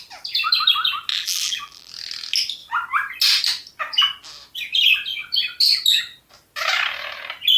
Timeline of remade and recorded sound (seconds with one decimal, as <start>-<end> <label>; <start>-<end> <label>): 0.0-1.1 recorded; 1.1-1.9 remade; 1.9-7.6 recorded